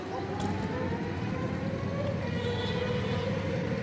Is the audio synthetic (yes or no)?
no